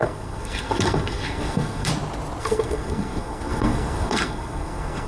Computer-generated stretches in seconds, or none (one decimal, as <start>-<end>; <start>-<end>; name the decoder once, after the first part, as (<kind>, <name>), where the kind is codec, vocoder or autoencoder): 0.0-1.9 (codec, SNAC); 2.4-5.1